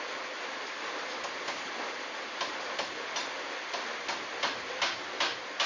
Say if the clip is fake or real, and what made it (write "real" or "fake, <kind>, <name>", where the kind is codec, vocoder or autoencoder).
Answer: real